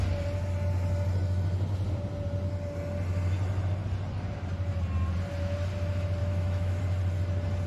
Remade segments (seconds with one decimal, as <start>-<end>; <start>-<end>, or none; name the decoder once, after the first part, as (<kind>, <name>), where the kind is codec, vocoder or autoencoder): 6.2-6.8 (autoencoder, DAC-VAE)